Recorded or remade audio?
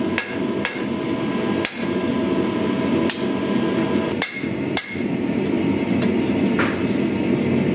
recorded